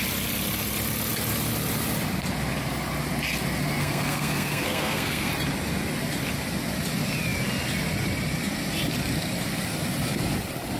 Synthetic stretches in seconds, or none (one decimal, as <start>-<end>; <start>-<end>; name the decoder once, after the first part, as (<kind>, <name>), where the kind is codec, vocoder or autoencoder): 3.8-5.3 (codec, SNAC)